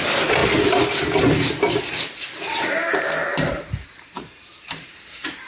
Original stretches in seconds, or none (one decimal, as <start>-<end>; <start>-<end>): 0.0-3.3